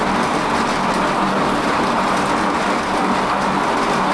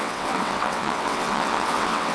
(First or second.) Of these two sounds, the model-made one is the second